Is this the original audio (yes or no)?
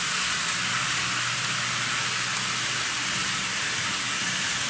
yes